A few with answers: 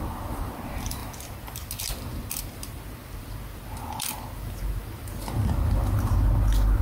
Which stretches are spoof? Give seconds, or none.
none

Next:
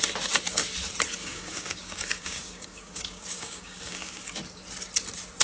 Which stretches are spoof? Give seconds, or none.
1.2-4.4 (codec, DAC)

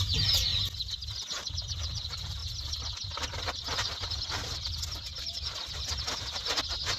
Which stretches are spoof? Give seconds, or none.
none

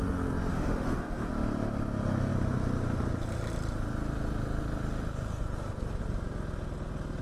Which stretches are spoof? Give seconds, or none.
0.5-1.3 (autoencoder, DAC-VAE)

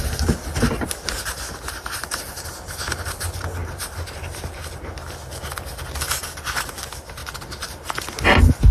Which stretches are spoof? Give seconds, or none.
none

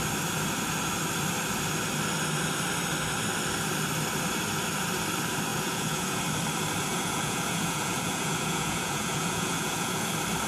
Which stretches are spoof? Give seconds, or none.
5.5-6.2 (vocoder, Vocos); 6.9-10.1